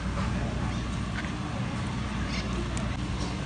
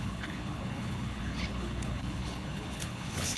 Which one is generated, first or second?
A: second